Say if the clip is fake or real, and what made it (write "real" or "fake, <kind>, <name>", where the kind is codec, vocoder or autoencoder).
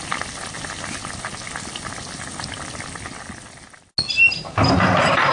real